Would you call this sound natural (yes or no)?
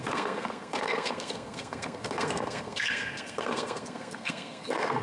no